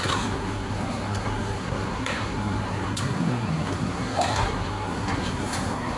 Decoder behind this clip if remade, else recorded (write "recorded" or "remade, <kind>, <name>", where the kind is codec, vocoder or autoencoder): remade, codec, SNAC